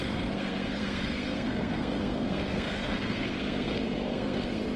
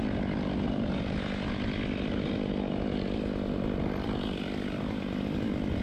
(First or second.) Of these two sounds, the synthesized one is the first